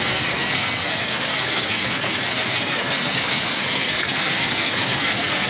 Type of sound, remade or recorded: remade